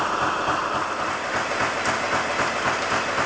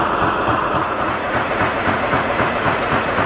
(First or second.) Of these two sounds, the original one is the first